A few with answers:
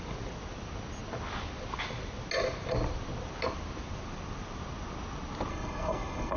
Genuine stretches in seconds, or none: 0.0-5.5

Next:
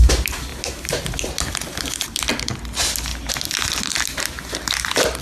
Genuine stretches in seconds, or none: 0.0-5.2

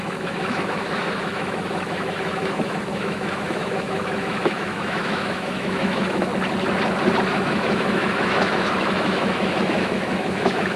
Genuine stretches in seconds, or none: 6.3-7.3

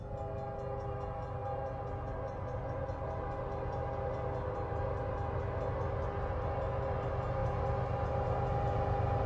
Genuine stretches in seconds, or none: 0.0-9.3

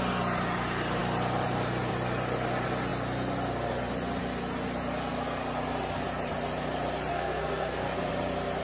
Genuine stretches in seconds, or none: 0.0-7.1; 8.1-8.6

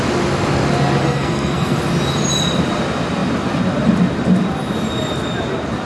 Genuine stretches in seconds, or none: 0.0-1.0; 1.8-5.9